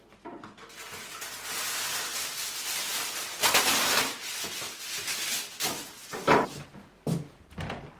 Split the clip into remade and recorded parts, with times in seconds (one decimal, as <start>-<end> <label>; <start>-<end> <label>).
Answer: 0.0-8.0 recorded